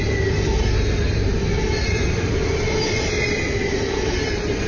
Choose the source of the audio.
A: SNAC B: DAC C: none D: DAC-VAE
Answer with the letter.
C